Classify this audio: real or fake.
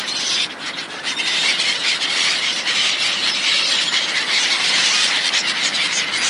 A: fake